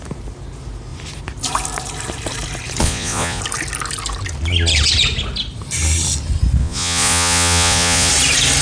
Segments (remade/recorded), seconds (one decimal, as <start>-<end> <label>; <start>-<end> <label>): 0.0-2.8 recorded; 2.8-3.4 remade; 3.4-6.6 recorded; 6.6-8.1 remade; 8.1-8.6 recorded